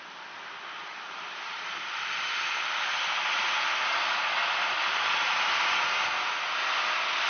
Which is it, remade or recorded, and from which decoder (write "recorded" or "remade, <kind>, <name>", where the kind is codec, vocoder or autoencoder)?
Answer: recorded